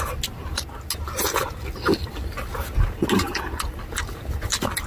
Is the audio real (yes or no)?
yes